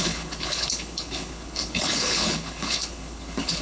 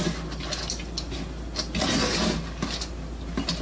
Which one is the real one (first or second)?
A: second